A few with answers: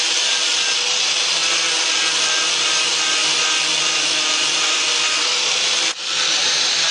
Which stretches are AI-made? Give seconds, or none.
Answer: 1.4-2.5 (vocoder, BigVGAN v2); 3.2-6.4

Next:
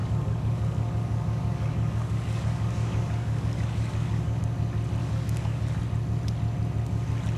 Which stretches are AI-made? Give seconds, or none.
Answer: 0.0-4.4 (codec, DAC); 5.0-5.8

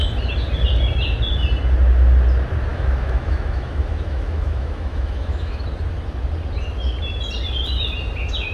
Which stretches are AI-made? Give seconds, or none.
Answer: 2.7-5.6 (autoencoder, DAC-VAE)